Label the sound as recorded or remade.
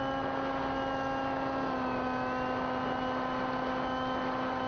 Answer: recorded